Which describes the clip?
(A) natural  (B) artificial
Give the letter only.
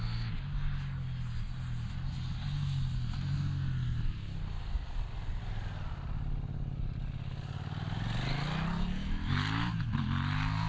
A